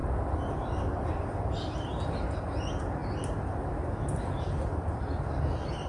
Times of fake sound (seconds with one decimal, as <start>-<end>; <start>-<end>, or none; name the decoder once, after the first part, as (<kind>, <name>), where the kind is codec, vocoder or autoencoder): none